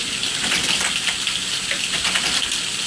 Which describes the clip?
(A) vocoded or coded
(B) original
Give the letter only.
B